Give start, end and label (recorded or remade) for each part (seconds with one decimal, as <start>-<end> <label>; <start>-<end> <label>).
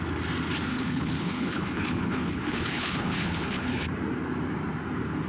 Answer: 0.0-0.7 recorded; 0.7-3.9 remade; 3.9-5.3 recorded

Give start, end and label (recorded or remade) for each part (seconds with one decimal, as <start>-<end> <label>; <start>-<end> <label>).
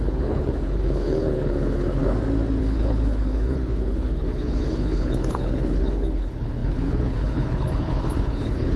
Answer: 0.0-2.0 remade; 2.0-2.6 recorded; 2.6-8.8 remade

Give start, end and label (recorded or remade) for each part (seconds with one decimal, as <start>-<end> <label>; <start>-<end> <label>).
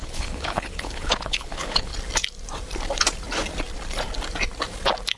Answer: 0.0-1.9 remade; 1.9-5.2 recorded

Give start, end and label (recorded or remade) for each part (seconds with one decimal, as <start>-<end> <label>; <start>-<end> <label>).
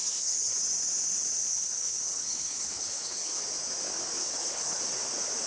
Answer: 0.0-0.6 remade; 0.6-1.5 recorded; 1.5-3.4 remade; 3.4-4.2 recorded; 4.2-4.8 remade; 4.8-5.5 recorded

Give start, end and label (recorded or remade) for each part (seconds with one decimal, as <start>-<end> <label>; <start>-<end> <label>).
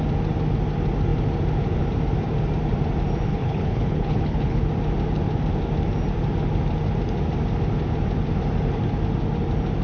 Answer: 0.0-3.3 recorded; 3.3-4.7 remade; 4.7-9.8 recorded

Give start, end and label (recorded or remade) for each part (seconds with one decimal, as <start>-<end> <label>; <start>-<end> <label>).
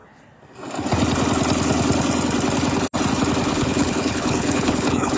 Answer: 0.0-3.5 recorded; 3.5-5.2 remade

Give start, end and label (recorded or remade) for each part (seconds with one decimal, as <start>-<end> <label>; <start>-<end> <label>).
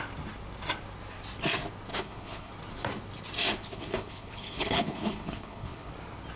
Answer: 0.0-1.9 recorded; 1.9-2.5 remade; 2.5-3.6 recorded; 3.6-5.9 remade; 5.9-6.4 recorded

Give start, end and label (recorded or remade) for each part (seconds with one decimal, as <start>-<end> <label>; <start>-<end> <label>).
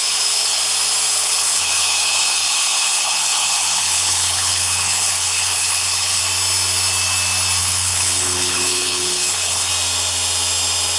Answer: 0.0-0.6 remade; 0.6-1.1 recorded; 1.1-6.2 remade; 6.2-7.6 recorded; 7.6-9.7 remade; 9.7-11.0 recorded